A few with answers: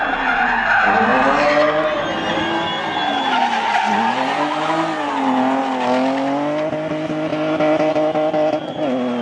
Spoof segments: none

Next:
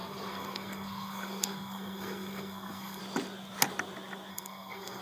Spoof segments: 0.0-3.0 (codec, SNAC); 4.3-5.0

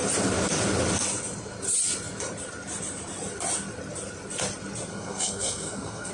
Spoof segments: 4.9-6.1 (codec, SNAC)

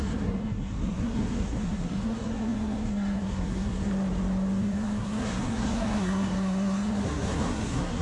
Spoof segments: 0.0-3.9 (codec, SNAC); 4.6-8.0

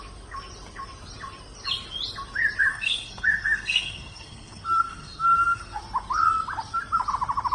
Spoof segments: 2.7-5.8 (codec, SNAC)

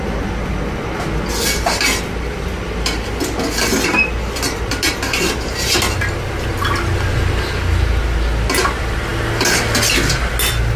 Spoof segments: none

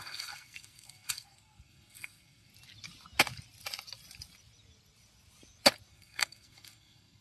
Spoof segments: 0.0-2.5 (codec, SNAC); 5.9-7.2

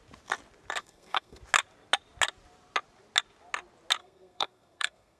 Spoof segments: 0.8-1.4 (codec, SNAC); 4.0-5.2